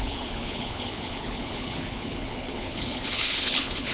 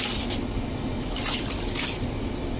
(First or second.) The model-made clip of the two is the first